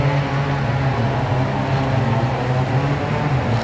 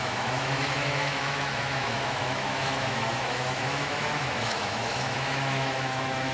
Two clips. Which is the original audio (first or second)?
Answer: first